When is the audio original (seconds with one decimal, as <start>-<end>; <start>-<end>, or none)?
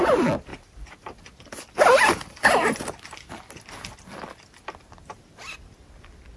0.0-6.4